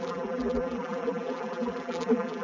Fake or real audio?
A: fake